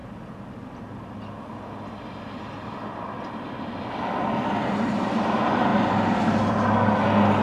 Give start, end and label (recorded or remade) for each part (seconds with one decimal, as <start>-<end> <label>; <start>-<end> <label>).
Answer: 0.0-7.4 recorded